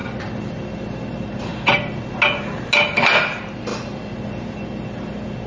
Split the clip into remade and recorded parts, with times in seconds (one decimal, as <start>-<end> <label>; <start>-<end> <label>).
0.0-5.5 recorded